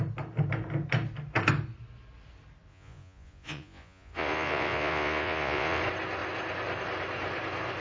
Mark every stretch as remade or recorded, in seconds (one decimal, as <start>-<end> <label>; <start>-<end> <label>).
0.0-2.7 recorded; 2.7-5.8 remade; 5.8-7.8 recorded